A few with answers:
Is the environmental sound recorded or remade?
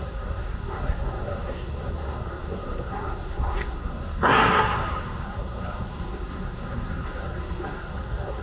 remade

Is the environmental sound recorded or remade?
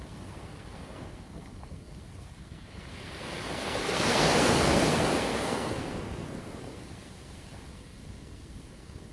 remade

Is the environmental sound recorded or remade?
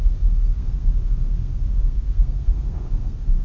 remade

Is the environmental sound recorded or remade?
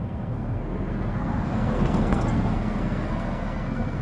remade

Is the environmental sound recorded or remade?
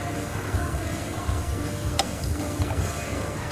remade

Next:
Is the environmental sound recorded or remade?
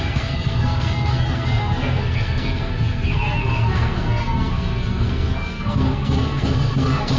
remade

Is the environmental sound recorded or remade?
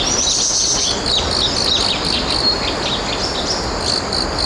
recorded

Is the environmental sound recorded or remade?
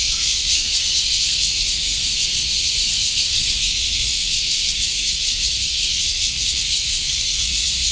remade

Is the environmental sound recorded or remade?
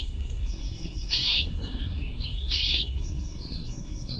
remade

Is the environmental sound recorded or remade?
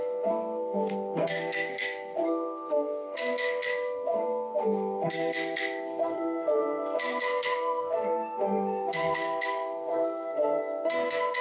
remade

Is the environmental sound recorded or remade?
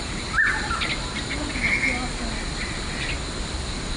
recorded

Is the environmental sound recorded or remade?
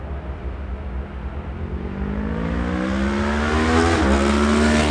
recorded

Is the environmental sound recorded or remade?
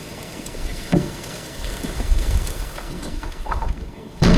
remade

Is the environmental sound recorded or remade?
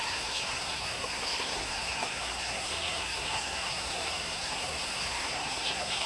remade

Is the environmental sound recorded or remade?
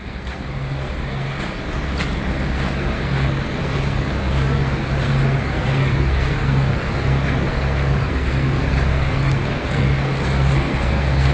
remade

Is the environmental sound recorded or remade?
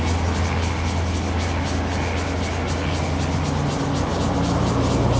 recorded